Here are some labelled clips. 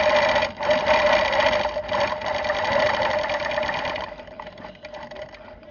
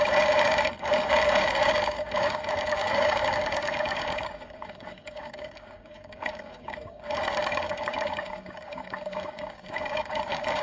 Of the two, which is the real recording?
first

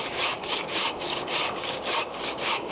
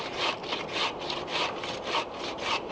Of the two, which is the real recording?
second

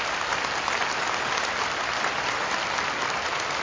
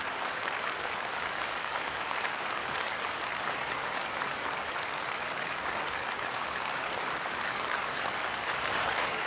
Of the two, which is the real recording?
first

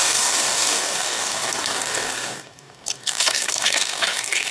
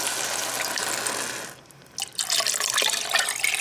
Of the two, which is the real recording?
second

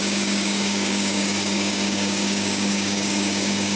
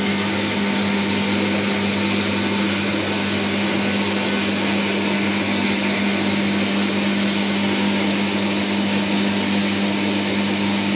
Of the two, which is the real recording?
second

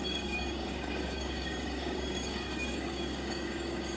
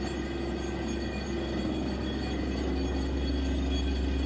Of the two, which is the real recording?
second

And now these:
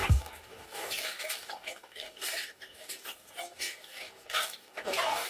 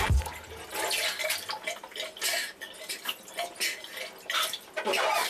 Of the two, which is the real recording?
second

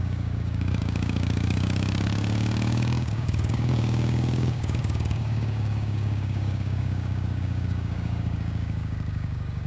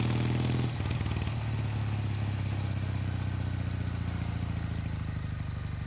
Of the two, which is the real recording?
second